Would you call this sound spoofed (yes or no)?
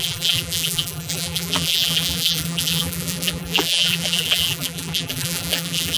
yes